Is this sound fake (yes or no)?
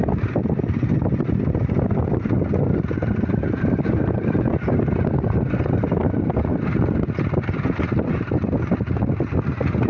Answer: no